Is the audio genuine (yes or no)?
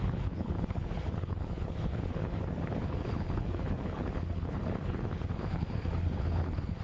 no